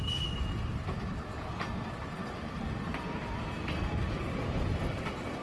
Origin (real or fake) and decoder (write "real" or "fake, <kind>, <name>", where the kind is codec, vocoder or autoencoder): real